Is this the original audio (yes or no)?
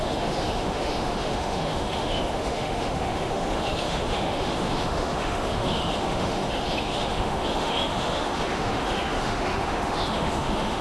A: no